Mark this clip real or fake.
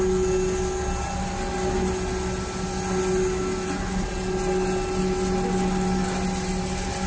real